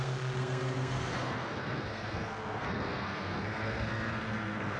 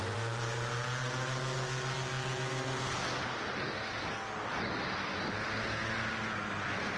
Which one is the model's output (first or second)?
first